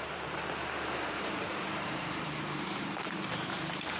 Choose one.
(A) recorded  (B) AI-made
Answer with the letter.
B